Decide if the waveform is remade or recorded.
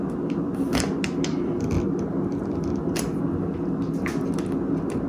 recorded